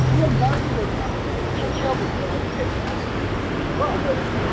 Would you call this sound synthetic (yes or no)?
no